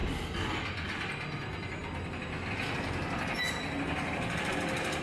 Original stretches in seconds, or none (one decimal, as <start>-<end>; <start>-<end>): 0.0-5.0